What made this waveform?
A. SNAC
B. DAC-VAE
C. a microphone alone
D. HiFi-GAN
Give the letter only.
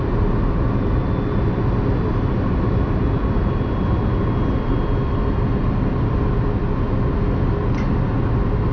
C